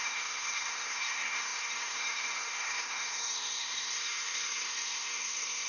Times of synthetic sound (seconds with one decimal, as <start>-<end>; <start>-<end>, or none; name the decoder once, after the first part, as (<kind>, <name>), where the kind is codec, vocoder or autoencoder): 0.0-5.7 (codec, SNAC)